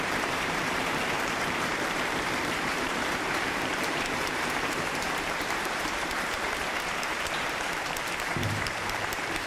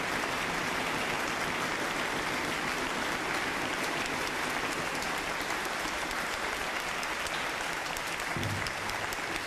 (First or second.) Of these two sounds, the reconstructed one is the first